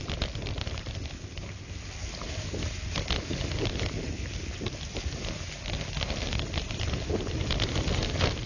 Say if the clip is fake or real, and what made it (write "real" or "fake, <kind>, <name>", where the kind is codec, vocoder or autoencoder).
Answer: real